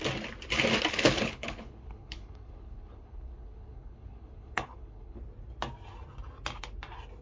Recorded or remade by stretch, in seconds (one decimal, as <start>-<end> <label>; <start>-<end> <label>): 0.0-0.9 recorded; 0.9-5.2 remade; 5.2-7.2 recorded